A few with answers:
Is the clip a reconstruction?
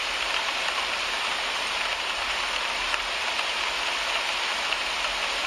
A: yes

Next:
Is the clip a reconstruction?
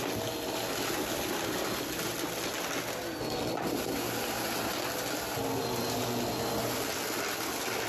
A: no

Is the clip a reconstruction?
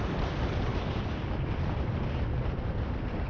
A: yes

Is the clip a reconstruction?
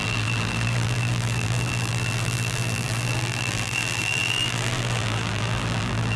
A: yes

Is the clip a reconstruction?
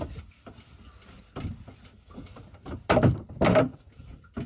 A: no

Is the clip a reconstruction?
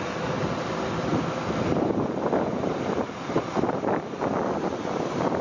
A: yes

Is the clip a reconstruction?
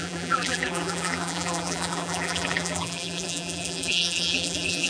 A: yes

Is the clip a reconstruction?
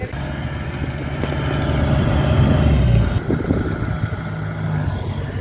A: no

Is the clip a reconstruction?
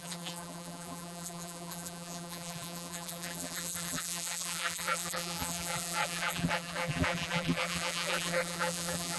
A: yes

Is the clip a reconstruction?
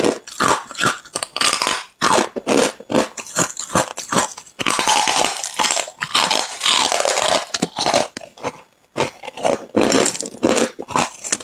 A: no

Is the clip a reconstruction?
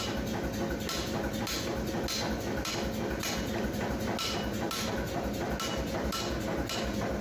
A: no